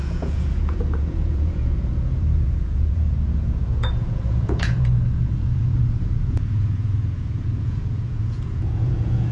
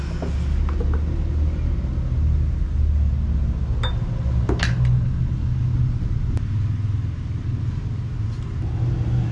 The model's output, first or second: first